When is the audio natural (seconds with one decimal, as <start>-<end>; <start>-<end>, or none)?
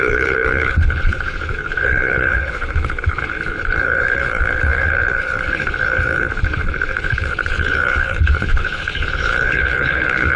none